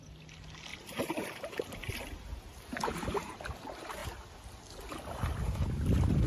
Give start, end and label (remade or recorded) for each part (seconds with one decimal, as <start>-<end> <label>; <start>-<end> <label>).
0.0-0.7 recorded; 0.7-1.9 remade; 1.9-2.8 recorded; 2.8-3.4 remade; 3.4-6.3 recorded